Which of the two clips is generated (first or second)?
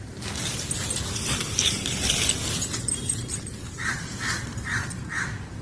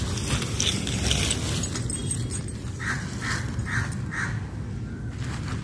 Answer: first